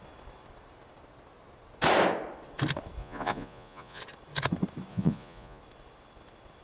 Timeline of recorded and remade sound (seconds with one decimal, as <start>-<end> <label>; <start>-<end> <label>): 0.0-3.0 recorded; 3.0-4.0 remade; 4.0-4.9 recorded; 4.9-5.6 remade; 5.6-6.6 recorded

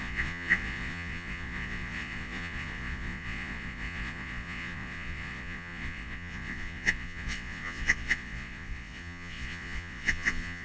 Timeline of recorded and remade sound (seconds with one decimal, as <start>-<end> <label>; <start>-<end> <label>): 0.0-10.6 remade

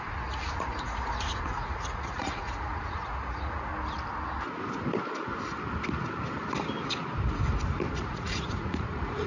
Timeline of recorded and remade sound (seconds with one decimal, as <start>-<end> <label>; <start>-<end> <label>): 0.0-3.7 remade; 3.7-7.9 recorded; 7.9-9.3 remade

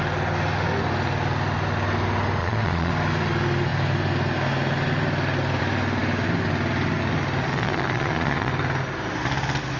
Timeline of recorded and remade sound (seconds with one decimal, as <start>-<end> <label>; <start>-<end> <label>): 0.0-2.4 recorded; 2.4-2.9 remade; 2.9-7.5 recorded; 7.5-8.5 remade; 8.5-9.8 recorded

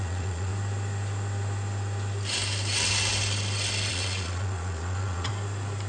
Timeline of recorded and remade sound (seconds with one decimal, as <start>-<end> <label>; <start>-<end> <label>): 0.0-0.5 remade; 0.5-3.9 recorded; 3.9-5.3 remade; 5.3-5.9 recorded

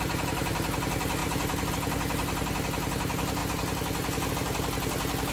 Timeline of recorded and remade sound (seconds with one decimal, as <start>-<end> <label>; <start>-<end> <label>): 0.0-5.3 recorded

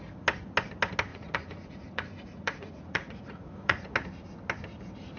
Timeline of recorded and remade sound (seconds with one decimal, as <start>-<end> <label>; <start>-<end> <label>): 0.0-1.1 recorded; 1.1-3.9 remade; 3.9-5.2 recorded

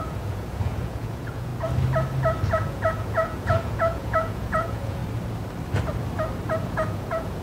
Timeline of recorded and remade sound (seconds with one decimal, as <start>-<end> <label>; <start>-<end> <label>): 0.0-1.5 remade; 1.5-2.5 recorded; 2.5-5.0 remade; 5.0-6.6 recorded; 6.6-7.4 remade